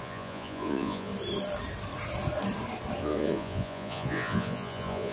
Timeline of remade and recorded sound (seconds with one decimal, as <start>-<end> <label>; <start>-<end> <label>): 0.0-1.1 remade; 1.1-3.0 recorded; 3.0-5.1 remade